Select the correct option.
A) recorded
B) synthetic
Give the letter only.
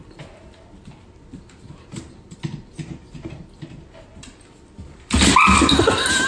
A